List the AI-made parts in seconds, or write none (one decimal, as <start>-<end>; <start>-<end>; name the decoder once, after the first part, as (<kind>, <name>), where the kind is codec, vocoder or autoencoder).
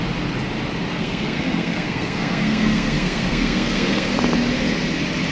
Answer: 0.9-4.1 (codec, SNAC)